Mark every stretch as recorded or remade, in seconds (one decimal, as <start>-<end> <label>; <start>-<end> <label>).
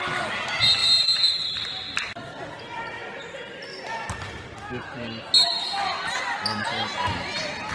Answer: 0.0-7.7 recorded